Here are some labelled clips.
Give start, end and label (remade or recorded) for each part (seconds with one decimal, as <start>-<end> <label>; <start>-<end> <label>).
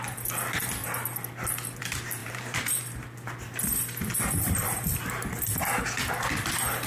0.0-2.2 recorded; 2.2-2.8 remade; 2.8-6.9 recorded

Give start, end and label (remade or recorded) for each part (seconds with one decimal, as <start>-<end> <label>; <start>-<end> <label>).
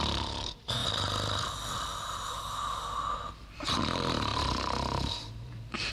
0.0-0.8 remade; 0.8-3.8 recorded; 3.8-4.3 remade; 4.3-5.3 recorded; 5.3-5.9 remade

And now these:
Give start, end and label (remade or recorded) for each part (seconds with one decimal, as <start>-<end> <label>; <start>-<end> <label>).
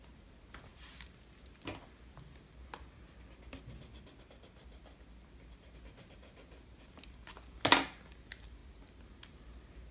0.0-9.9 recorded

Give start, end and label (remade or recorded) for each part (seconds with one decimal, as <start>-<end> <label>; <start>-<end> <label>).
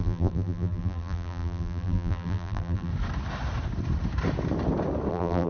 0.0-2.9 remade; 2.9-5.1 recorded; 5.1-5.5 remade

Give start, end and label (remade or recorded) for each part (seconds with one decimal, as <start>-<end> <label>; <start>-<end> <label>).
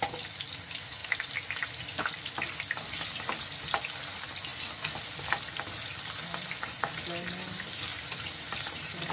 0.0-7.9 recorded; 7.9-9.1 remade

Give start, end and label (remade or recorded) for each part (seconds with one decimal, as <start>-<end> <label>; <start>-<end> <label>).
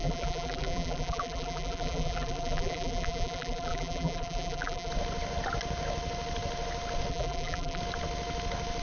0.0-4.9 remade; 4.9-7.1 recorded; 7.1-7.8 remade; 7.8-8.8 recorded